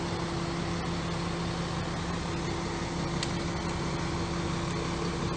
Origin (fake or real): real